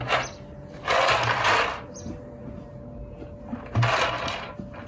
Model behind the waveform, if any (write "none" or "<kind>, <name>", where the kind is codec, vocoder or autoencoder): none